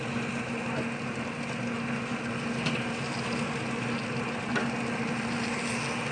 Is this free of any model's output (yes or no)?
yes